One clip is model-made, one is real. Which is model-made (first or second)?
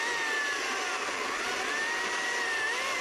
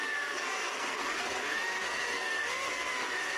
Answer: second